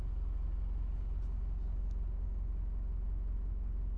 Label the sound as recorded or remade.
recorded